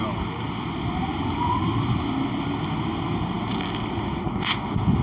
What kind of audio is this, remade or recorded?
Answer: recorded